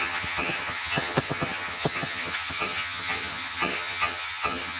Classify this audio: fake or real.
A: fake